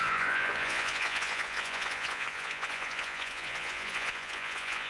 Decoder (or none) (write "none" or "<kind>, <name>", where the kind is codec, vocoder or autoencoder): vocoder, Vocos